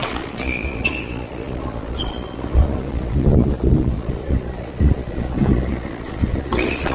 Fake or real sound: fake